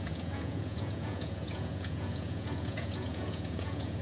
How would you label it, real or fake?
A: fake